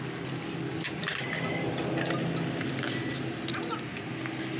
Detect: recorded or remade recorded